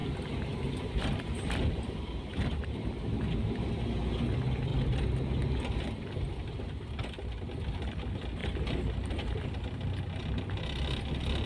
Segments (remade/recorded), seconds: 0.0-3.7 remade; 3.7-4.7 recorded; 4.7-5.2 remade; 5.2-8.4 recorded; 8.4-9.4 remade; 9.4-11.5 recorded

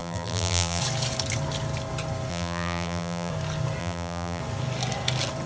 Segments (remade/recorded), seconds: 0.0-0.8 remade; 0.8-2.3 recorded; 2.3-3.3 remade; 3.3-3.8 recorded; 3.8-4.4 remade; 4.4-5.5 recorded